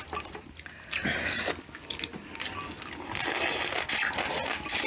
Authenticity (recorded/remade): recorded